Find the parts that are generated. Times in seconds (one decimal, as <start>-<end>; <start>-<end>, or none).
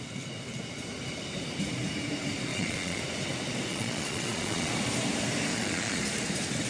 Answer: 2.5-3.0; 3.7-4.7; 5.5-6.0